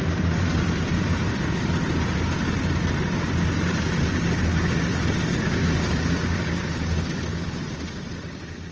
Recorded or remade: remade